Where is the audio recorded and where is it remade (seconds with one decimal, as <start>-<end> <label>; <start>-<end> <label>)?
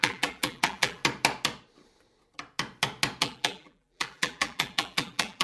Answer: 0.0-1.0 remade; 1.0-3.2 recorded; 3.2-5.4 remade